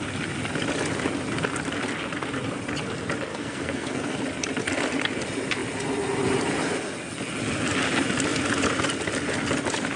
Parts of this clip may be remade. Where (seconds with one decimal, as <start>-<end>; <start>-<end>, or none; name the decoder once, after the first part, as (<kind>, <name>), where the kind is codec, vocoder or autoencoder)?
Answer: 3.3-4.2 (codec, SNAC)